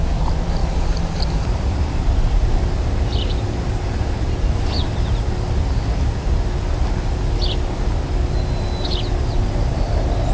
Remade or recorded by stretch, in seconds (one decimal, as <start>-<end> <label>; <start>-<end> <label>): 0.0-10.3 recorded